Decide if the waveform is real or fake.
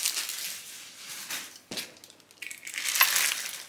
real